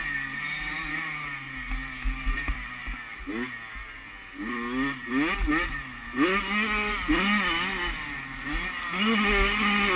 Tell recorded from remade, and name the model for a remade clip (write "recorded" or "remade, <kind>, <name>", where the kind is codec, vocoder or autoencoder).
recorded